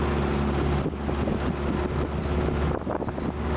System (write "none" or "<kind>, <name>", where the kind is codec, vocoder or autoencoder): none